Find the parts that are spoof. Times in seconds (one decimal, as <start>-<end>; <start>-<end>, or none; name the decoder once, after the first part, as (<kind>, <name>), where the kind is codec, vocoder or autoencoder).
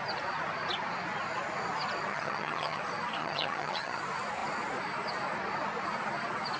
2.1-2.8 (vocoder, HiFi-GAN); 3.2-4.0